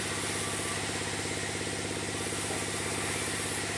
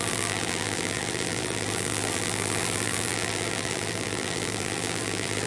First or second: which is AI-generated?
second